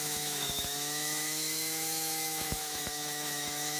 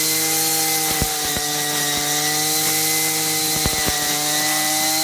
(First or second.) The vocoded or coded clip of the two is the first